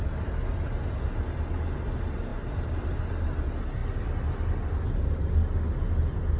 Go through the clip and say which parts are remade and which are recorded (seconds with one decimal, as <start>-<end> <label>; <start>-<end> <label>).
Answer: 0.0-2.3 recorded; 2.3-3.0 remade; 3.0-3.8 recorded; 3.8-5.1 remade; 5.1-6.4 recorded